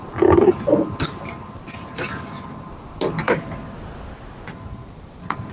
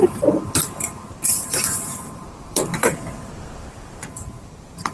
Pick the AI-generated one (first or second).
second